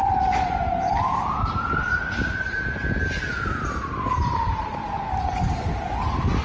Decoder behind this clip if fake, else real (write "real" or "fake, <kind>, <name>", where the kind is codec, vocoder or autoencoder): real